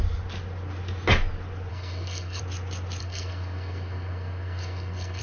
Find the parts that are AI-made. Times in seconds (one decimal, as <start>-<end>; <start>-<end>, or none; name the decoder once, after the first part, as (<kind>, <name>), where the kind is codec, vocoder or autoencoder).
1.7-2.4 (codec, SNAC); 3.0-5.2